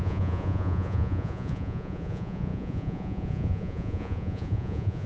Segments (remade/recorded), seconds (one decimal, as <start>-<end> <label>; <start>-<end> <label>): 0.0-5.1 remade